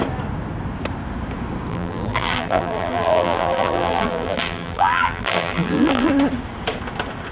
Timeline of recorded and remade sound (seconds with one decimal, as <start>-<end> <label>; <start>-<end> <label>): 0.0-1.7 recorded; 1.7-6.1 remade; 6.1-7.3 recorded